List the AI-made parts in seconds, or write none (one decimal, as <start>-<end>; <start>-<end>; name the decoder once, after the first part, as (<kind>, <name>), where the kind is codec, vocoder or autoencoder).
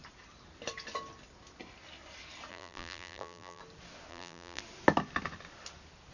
2.5-3.6 (vocoder, BigVGAN v2); 4.1-4.6